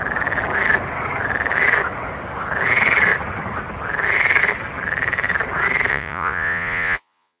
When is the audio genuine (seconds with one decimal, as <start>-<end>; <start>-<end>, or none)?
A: 0.0-5.9